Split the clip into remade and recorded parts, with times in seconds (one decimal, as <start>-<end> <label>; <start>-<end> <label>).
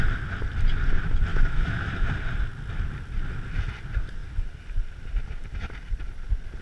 0.0-1.3 recorded; 1.3-2.1 remade; 2.1-6.6 recorded